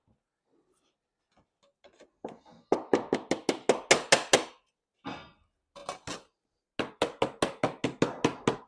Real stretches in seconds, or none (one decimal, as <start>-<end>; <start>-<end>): 0.0-8.7